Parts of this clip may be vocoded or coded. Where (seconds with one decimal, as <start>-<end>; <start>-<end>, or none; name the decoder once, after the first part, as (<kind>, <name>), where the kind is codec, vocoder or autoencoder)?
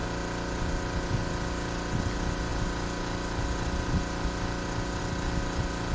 none